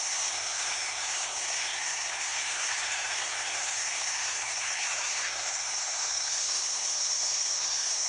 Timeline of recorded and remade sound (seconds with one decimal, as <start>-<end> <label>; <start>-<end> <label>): 0.0-8.1 remade